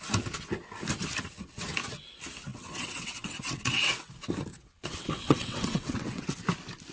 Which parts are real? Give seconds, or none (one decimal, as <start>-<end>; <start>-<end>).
0.0-2.5; 4.1-4.5; 6.4-6.9